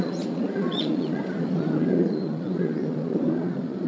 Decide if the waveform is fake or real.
fake